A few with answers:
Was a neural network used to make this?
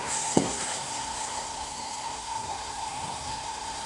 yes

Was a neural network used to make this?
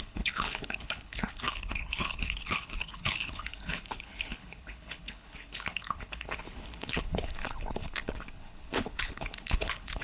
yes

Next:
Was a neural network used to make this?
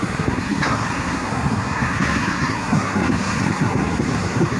yes